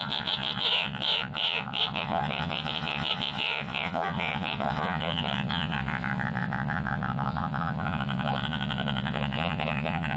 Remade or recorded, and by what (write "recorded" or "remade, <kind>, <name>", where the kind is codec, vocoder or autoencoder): remade, vocoder, Vocos